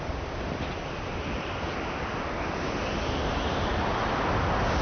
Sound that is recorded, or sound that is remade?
recorded